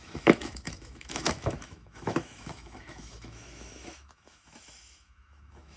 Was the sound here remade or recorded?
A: remade